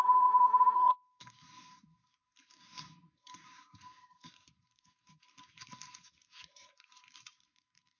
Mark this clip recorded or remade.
remade